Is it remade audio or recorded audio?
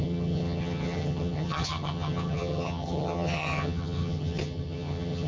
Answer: remade